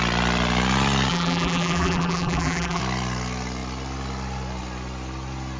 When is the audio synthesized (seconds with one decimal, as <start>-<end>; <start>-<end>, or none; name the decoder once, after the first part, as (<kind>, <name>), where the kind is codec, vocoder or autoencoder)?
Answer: 1.1-2.8 (vocoder, BigVGAN v2)